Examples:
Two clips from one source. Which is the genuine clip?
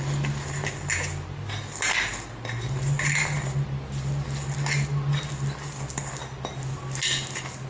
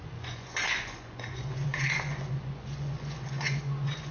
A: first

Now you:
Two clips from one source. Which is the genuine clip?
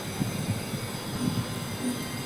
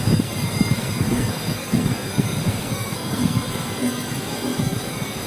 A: first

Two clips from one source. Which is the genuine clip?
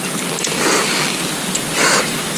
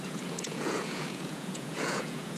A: first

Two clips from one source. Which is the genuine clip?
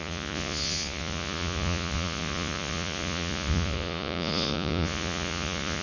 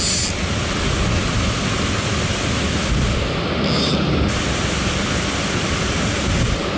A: second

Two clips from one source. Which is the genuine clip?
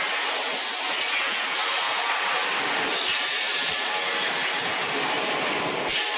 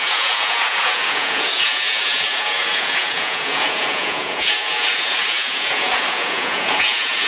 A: first